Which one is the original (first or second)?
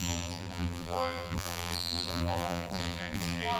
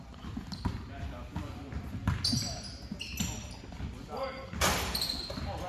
second